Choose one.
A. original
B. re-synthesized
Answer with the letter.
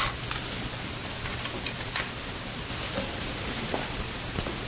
A